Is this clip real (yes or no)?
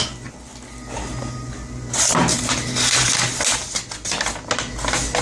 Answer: yes